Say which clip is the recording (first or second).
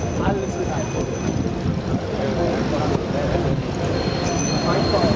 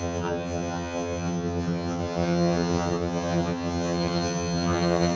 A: first